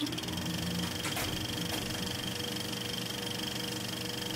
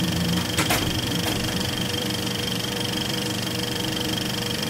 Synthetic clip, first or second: second